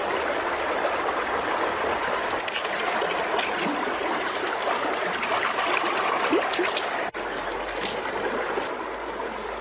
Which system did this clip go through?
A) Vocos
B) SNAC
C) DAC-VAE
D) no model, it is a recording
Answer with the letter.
D